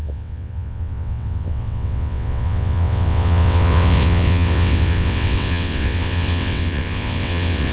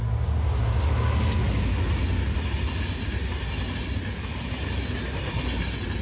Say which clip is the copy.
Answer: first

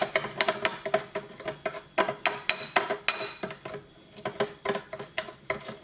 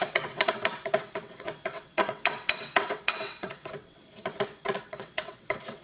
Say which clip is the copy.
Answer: second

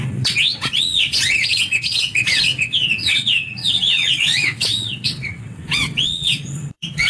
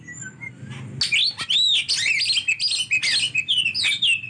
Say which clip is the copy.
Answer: first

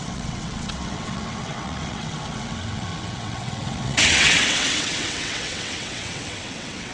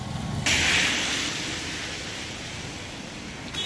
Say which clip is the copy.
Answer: first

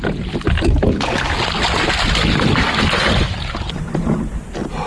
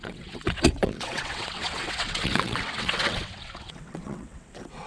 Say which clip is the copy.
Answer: second